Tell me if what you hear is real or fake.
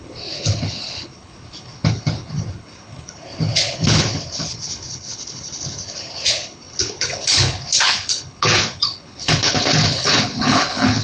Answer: fake